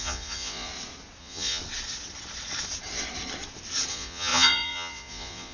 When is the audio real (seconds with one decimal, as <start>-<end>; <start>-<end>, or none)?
0.7-1.2; 1.6-3.9